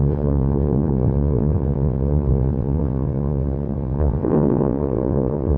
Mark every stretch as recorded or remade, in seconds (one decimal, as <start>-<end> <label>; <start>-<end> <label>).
0.0-5.6 remade

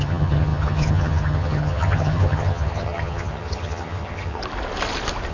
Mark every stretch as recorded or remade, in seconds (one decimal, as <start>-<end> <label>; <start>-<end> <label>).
0.0-4.4 remade; 4.4-5.3 recorded